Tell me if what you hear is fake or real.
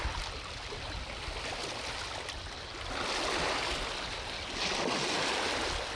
real